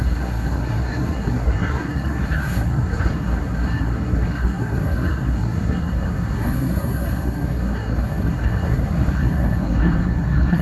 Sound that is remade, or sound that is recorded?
remade